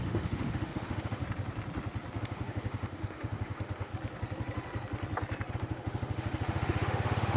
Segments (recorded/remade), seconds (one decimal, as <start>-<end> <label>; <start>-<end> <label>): 0.0-1.2 remade; 1.2-2.2 recorded; 2.2-3.9 remade; 3.9-5.5 recorded; 5.5-7.4 remade